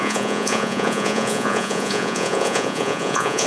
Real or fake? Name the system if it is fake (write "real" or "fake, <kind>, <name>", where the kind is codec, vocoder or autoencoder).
fake, vocoder, Vocos